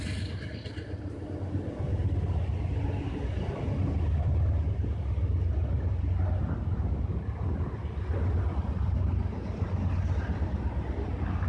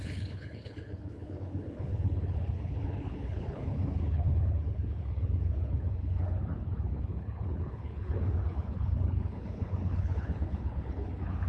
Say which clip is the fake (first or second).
second